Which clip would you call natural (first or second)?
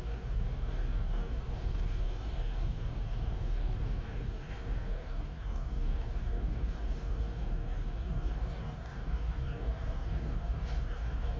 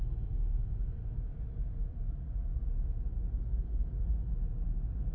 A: second